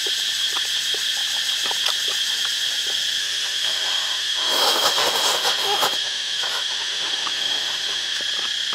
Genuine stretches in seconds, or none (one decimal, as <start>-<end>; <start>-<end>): 0.0-3.2; 8.2-8.7